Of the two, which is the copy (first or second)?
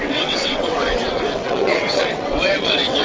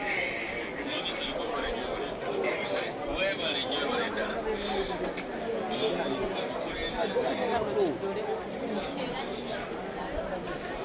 first